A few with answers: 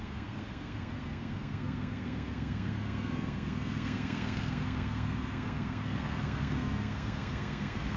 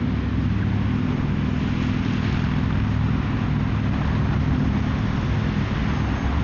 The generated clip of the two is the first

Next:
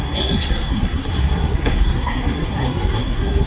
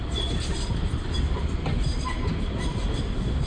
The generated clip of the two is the first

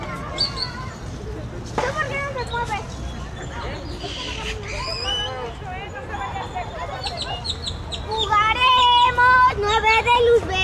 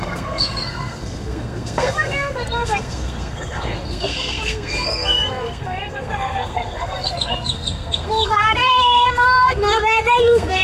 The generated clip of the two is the second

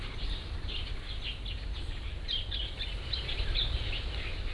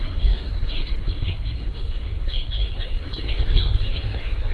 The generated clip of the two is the second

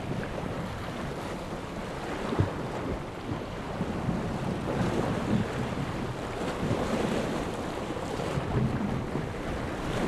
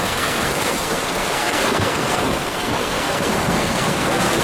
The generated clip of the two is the second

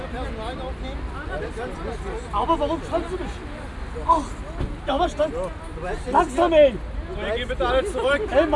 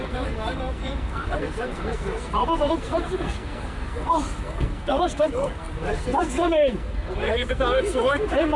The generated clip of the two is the second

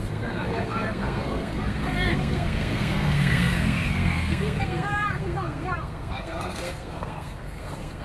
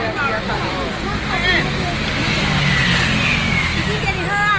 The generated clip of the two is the first